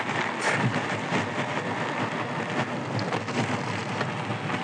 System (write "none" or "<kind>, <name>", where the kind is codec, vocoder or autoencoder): none